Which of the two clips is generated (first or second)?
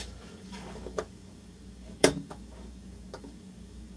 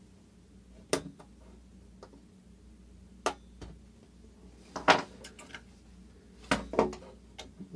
first